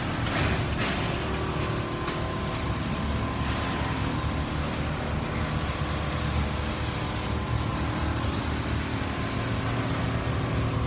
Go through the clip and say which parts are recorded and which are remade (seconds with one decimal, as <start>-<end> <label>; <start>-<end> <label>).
0.0-10.9 recorded